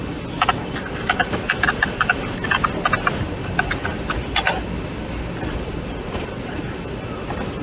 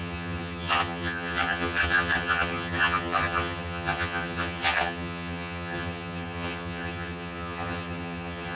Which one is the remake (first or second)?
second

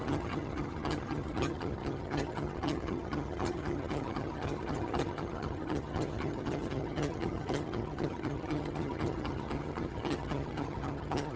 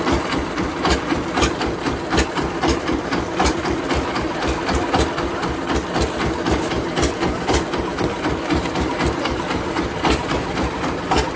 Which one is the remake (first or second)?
first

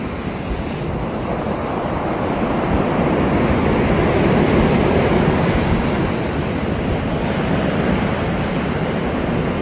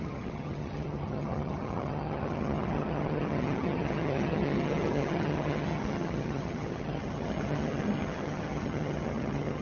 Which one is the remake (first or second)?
second